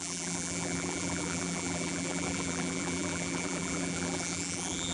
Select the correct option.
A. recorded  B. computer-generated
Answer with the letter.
B